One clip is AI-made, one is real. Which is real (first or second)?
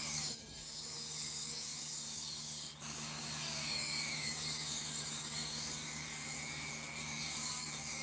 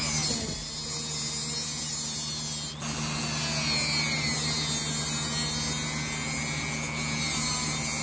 second